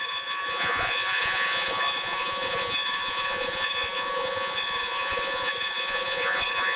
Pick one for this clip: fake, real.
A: fake